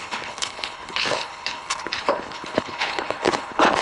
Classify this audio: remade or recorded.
remade